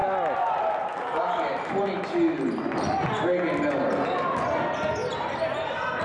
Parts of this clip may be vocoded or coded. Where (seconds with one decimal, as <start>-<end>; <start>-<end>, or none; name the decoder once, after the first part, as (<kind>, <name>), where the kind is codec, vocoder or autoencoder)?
none